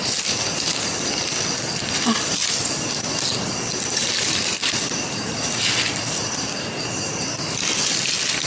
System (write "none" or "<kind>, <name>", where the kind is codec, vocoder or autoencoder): none